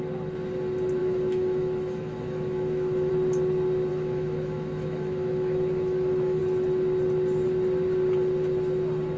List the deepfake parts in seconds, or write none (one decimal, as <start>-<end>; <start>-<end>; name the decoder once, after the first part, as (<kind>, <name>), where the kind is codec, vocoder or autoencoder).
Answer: 1.0-3.1 (autoencoder, DAC-VAE); 3.9-6.4